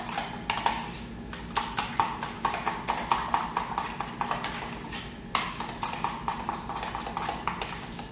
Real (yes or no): yes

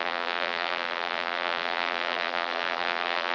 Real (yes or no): no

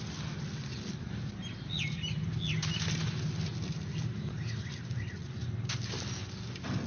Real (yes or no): yes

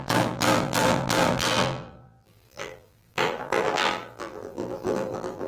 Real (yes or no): no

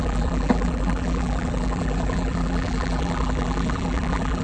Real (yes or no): no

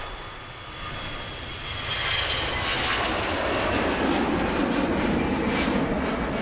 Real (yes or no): yes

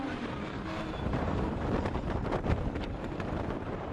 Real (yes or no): no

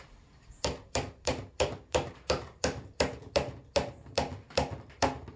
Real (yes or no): yes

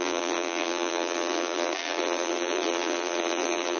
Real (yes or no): no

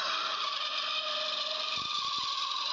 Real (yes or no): no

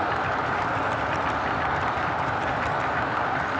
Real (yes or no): no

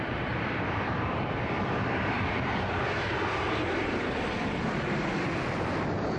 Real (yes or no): no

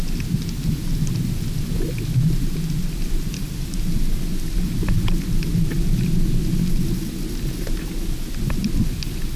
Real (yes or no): yes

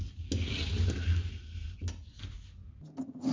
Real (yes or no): yes